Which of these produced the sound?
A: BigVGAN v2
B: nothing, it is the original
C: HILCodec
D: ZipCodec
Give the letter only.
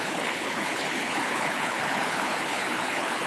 C